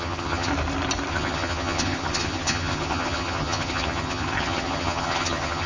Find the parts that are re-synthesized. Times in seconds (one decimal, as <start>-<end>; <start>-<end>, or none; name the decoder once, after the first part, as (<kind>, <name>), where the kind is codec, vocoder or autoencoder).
0.0-0.5 (vocoder, HiFi-GAN); 1.1-5.7